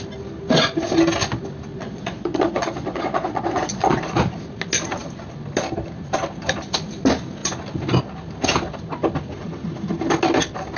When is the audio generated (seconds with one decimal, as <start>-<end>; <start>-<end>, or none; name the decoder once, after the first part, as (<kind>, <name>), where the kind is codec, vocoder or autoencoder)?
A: 1.7-4.0 (vocoder, Vocos)